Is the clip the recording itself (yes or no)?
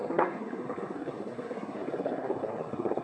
no